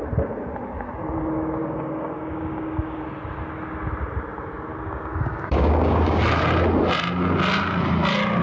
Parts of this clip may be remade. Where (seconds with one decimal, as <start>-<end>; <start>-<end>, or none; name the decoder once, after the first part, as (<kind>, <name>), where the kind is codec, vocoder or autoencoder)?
1.6-3.0 (codec, DAC); 4.7-6.2